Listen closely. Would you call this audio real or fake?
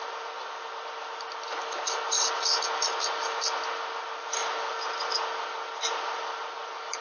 real